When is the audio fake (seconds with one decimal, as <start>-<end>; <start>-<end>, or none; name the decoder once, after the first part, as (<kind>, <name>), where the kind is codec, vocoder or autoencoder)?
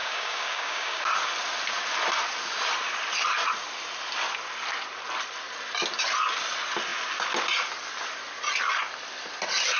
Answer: 0.0-1.0 (codec, DAC)